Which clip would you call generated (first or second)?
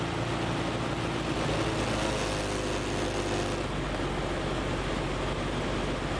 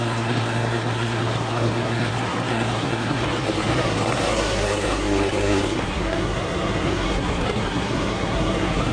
second